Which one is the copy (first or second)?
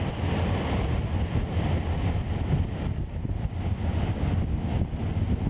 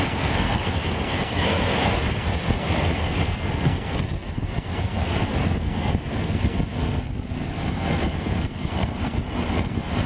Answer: second